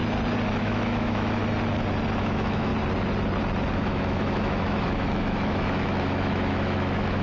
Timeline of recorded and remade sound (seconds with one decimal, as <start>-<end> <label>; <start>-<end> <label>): 0.0-0.6 recorded; 0.6-1.4 remade; 1.4-2.2 recorded; 2.2-2.7 remade; 2.7-3.7 recorded; 3.7-7.2 remade

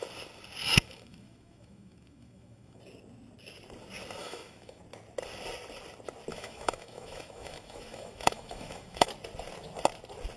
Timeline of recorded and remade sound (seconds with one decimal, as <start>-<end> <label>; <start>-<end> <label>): 0.0-0.6 recorded; 0.6-2.8 remade; 2.8-4.2 recorded; 4.2-4.8 remade; 4.8-6.3 recorded; 6.3-9.1 remade; 9.1-10.4 recorded

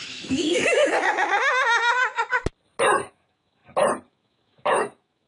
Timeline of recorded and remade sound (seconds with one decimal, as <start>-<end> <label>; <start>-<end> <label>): 0.0-0.8 remade; 0.8-3.1 recorded; 3.1-3.6 remade; 3.6-4.1 recorded; 4.1-5.3 remade